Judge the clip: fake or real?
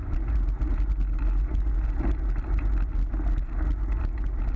real